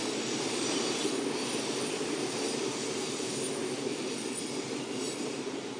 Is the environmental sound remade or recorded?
recorded